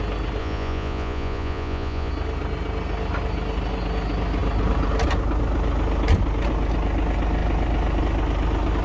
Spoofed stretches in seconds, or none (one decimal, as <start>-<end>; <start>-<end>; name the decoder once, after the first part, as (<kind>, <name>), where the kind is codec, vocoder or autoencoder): 0.4-2.1 (vocoder, Vocos)